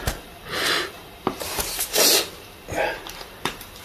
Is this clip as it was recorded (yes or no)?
no